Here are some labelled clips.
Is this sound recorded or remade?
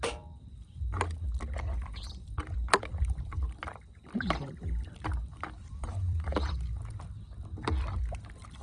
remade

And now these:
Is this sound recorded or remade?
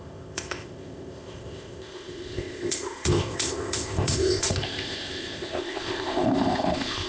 remade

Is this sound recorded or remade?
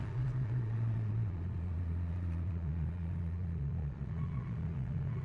remade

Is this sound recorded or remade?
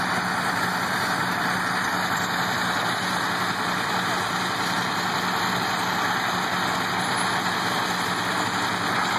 recorded